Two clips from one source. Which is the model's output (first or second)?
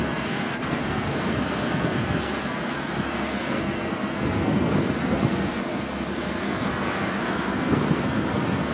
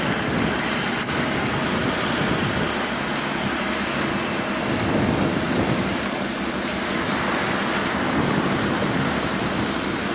first